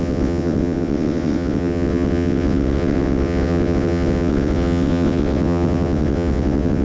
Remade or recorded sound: remade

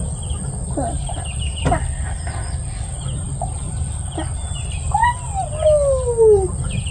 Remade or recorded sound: recorded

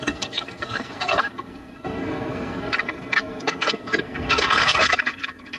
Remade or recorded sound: remade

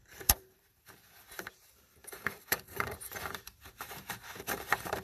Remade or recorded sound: remade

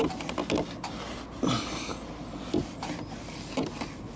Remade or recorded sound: recorded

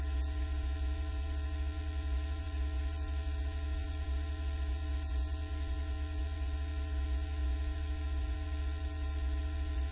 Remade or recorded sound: remade